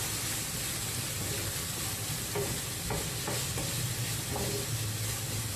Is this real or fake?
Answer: real